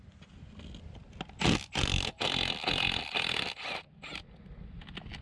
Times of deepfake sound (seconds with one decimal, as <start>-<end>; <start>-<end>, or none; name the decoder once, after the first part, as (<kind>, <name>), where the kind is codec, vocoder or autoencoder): none